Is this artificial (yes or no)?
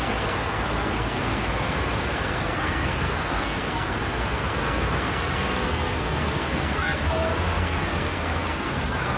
yes